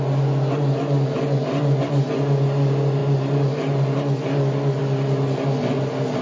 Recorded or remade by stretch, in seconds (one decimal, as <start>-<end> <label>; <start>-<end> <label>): 0.0-6.2 recorded